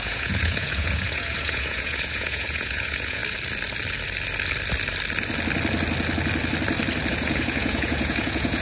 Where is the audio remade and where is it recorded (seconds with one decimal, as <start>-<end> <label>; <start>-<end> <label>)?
0.0-3.2 remade; 3.2-7.1 recorded; 7.1-8.6 remade